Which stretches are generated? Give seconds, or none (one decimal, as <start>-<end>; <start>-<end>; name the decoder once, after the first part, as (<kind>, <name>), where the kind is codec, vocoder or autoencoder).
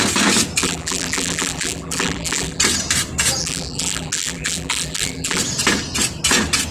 0.6-2.6 (vocoder, BigVGAN v2); 3.4-5.4